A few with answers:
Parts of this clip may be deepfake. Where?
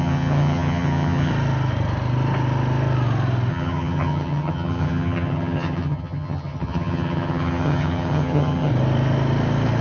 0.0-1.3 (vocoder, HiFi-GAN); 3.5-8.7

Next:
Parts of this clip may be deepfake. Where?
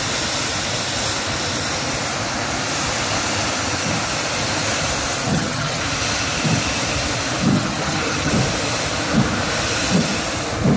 5.3-5.8 (vocoder, HiFi-GAN); 7.5-8.3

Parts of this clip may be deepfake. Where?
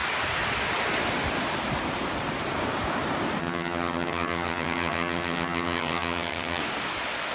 3.4-6.6 (vocoder, HiFi-GAN)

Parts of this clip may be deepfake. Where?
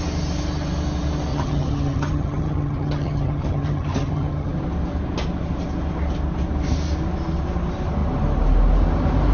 1.3-4.5 (vocoder, HiFi-GAN)